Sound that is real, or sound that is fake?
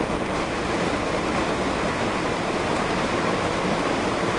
real